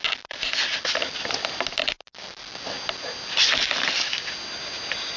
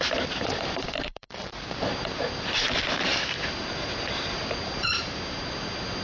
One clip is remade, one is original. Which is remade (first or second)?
second